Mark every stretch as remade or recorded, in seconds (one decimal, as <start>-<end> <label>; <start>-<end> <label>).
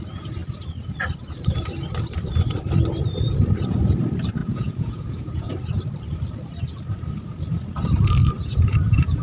0.0-4.4 recorded; 4.4-5.5 remade; 5.5-8.4 recorded; 8.4-9.2 remade